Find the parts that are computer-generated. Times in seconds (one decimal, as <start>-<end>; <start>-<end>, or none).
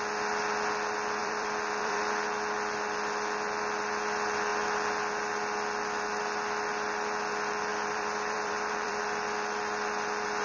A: 1.2-2.0; 7.7-9.0